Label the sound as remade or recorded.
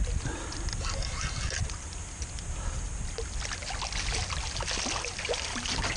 recorded